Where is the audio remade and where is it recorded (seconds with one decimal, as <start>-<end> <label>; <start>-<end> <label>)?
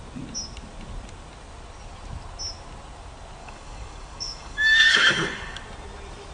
0.0-3.4 recorded; 3.4-5.6 remade; 5.6-6.3 recorded